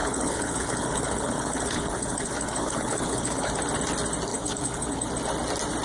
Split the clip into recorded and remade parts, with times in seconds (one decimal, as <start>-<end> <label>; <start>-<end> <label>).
0.0-3.5 remade; 3.5-4.3 recorded; 4.3-5.1 remade; 5.1-5.8 recorded